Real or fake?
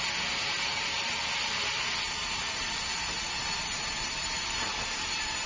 real